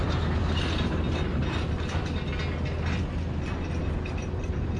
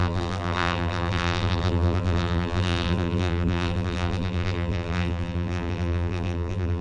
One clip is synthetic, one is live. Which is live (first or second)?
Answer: first